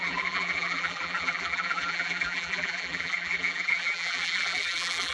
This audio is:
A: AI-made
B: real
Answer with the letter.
A